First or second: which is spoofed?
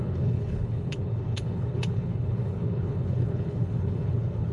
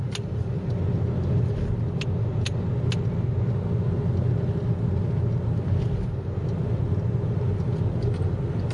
first